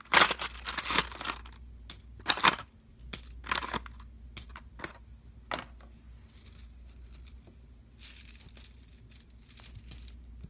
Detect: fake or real real